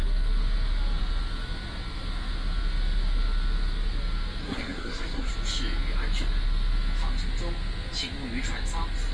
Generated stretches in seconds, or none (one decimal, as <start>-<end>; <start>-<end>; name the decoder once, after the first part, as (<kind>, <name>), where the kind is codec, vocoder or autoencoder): 4.4-5.3 (codec, SNAC)